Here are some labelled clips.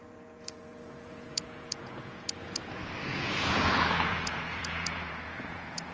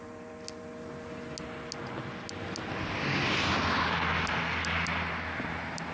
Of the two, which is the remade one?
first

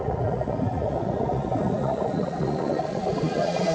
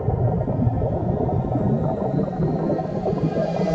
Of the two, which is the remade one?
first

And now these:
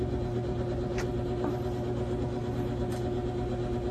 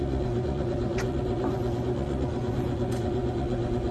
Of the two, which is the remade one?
second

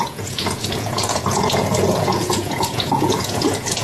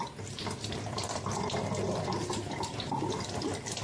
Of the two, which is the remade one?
first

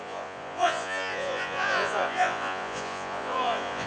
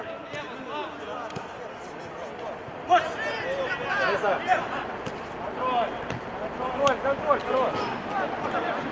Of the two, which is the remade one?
first